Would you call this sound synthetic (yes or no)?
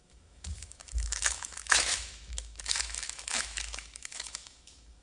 yes